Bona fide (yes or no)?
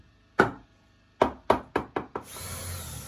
yes